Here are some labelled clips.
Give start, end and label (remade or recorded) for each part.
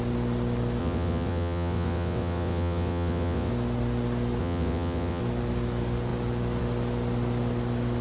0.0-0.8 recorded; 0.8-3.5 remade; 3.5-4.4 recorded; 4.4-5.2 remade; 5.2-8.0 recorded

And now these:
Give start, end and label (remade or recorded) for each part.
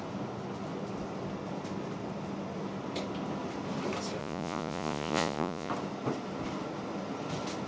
0.0-4.2 recorded; 4.2-5.7 remade; 5.7-7.7 recorded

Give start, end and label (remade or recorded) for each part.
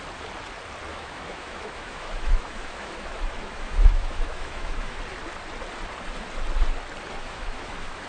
0.0-0.9 recorded; 0.9-5.0 remade; 5.0-7.2 recorded; 7.2-8.1 remade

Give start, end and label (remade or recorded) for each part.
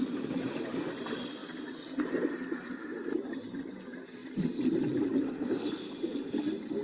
0.0-4.2 recorded; 4.2-5.9 remade; 5.9-6.8 recorded